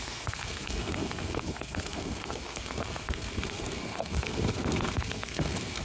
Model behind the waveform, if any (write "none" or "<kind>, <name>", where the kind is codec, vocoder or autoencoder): codec, SNAC